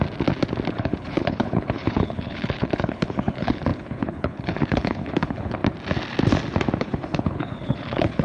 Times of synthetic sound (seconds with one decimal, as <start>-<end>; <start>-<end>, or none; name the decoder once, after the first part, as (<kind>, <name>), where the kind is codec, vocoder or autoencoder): 0.7-5.6 (codec, HILCodec); 6.8-8.2